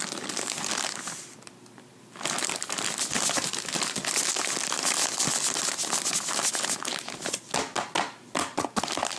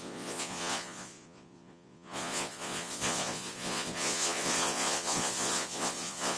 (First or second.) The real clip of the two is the first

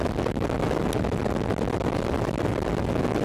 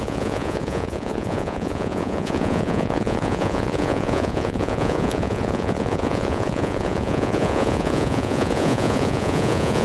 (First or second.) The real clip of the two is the first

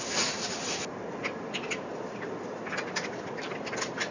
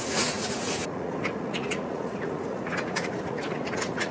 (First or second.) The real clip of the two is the first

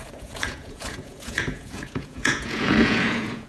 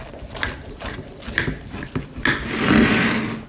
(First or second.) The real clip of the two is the second